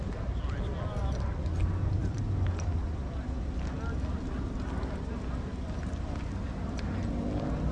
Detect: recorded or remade recorded